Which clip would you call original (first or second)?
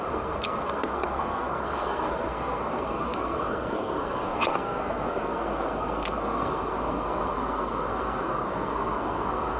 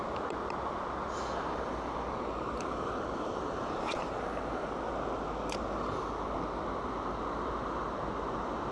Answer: second